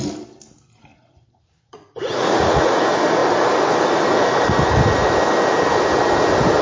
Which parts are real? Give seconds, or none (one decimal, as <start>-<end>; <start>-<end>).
0.0-0.9; 2.8-6.6